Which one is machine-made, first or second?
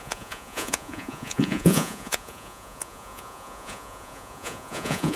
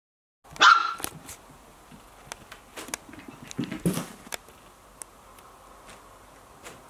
first